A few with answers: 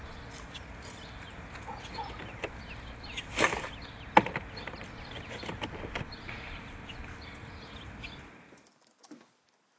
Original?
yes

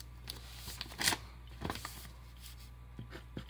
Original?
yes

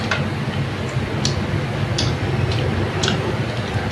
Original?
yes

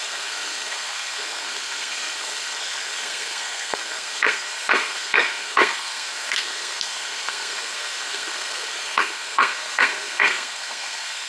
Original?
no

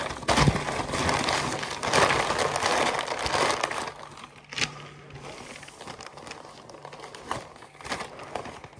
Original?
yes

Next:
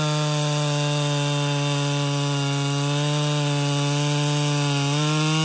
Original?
yes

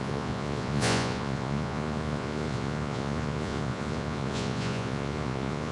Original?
no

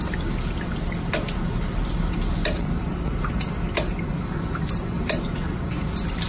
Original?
yes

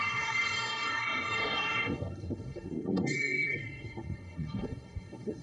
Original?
no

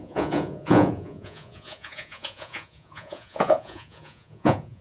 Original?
no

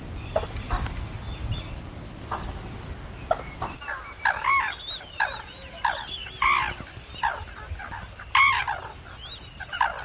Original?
yes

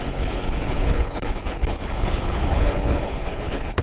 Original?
no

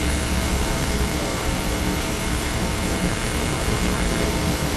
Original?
no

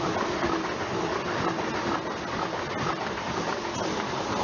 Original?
yes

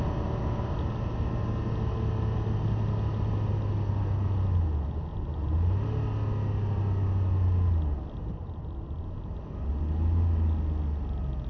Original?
yes